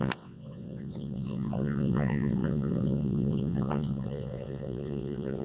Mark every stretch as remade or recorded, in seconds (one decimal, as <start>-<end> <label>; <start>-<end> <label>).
0.0-5.4 remade